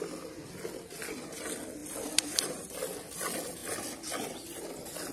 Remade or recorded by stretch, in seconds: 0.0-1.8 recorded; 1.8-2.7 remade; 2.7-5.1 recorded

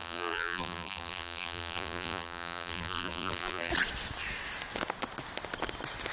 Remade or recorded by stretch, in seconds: 0.0-3.7 remade; 3.7-6.1 recorded